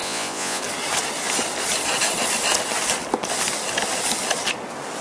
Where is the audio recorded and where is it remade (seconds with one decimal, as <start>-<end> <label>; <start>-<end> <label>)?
0.0-0.6 remade; 0.6-5.0 recorded